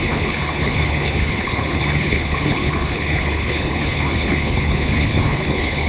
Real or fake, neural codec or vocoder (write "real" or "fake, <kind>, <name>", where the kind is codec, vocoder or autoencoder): fake, codec, HILCodec